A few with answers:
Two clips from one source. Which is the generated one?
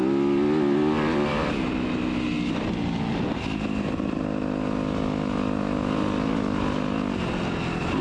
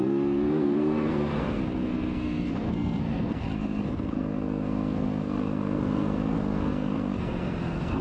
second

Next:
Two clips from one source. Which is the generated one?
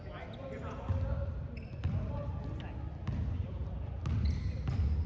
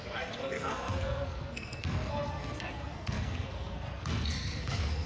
second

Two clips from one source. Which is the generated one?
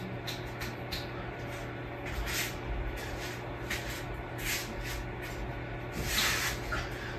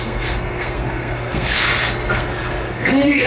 second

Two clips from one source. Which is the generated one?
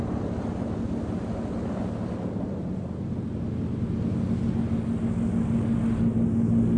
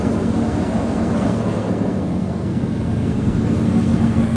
second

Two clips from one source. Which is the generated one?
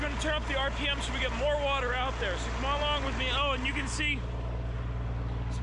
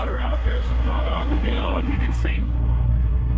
second